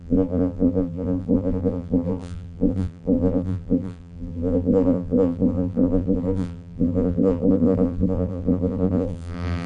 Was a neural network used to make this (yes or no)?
yes